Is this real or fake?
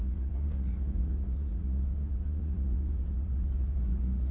fake